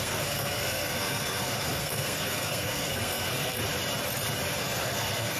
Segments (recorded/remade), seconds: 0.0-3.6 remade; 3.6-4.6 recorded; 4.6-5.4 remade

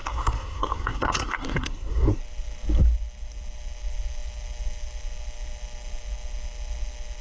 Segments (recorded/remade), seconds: 0.0-2.2 remade; 2.2-7.2 recorded

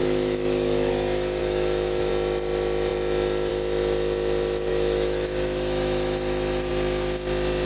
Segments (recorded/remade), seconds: 0.0-0.9 remade; 0.9-1.4 recorded; 1.4-2.1 remade; 2.1-4.7 recorded; 4.7-6.7 remade; 6.7-7.7 recorded

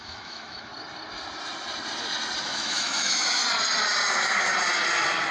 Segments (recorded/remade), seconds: 0.0-0.7 remade; 0.7-2.4 recorded; 2.4-3.4 remade; 3.4-4.1 recorded; 4.1-4.5 remade; 4.5-5.3 recorded

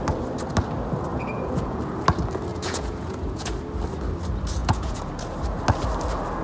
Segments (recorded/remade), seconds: 0.0-1.1 recorded; 1.1-1.8 remade; 1.8-2.5 recorded; 2.5-3.5 remade; 3.5-4.6 recorded; 4.6-5.1 remade; 5.1-6.4 recorded

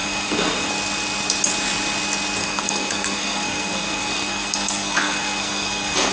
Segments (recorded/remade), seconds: 0.0-0.7 remade; 0.7-2.4 recorded; 2.4-6.1 remade

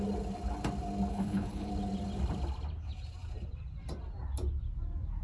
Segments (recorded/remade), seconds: 0.0-1.1 recorded; 1.1-1.7 remade; 1.7-5.2 recorded